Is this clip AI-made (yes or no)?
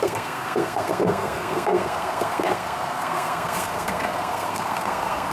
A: yes